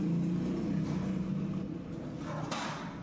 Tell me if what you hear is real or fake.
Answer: real